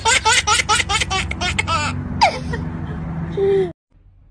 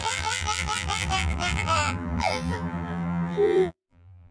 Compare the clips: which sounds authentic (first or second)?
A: first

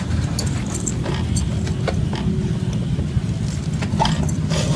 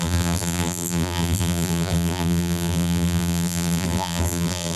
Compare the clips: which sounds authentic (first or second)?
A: first